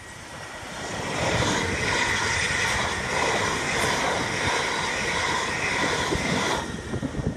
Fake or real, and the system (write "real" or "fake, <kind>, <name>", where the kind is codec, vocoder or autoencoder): real